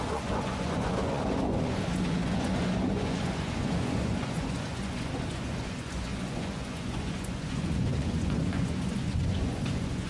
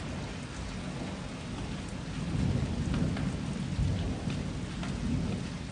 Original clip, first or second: second